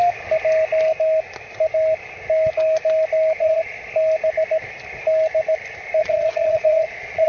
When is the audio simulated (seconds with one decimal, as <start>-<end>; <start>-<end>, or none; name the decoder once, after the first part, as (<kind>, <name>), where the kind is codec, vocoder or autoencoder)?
3.4-3.9 (vocoder, Vocos); 6.0-7.3